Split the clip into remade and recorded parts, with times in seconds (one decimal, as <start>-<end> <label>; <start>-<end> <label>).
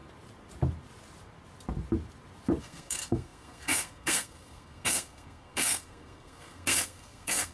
0.0-2.6 recorded; 2.6-7.5 remade